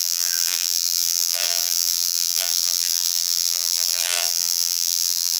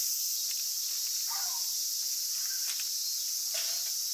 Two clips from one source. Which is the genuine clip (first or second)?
second